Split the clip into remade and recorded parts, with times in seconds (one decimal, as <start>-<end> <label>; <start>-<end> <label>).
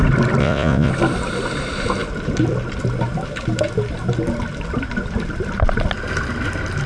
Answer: 0.0-0.4 recorded; 0.4-0.9 remade; 0.9-6.9 recorded